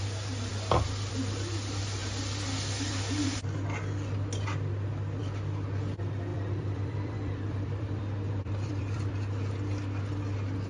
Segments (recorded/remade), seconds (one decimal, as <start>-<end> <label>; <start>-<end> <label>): 0.0-6.3 recorded; 6.3-9.1 remade; 9.1-10.7 recorded